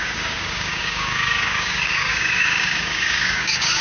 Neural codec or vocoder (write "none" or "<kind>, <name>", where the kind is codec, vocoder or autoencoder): codec, DAC